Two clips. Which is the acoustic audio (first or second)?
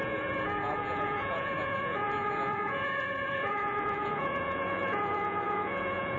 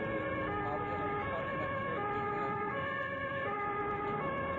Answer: second